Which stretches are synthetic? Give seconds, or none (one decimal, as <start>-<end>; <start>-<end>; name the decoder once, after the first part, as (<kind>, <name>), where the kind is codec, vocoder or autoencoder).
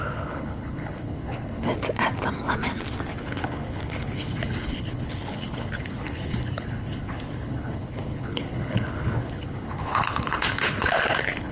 0.0-1.7 (codec, HILCodec); 3.1-11.5